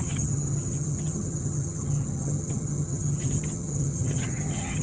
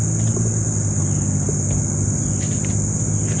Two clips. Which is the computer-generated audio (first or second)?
first